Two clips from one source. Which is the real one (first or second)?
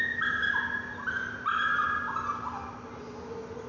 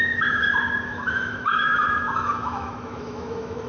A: first